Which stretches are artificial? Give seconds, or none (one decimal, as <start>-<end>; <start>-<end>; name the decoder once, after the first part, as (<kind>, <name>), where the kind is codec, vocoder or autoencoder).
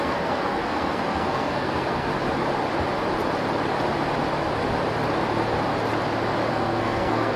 0.0-2.1 (codec, SNAC); 6.5-7.4